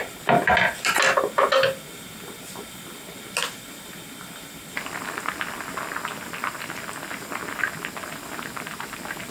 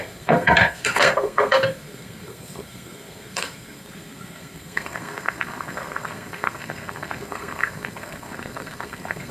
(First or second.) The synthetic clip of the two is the second